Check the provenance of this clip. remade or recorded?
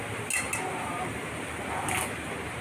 recorded